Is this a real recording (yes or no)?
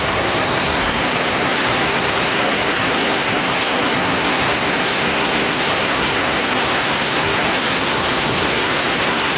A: no